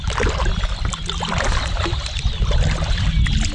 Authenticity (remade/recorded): recorded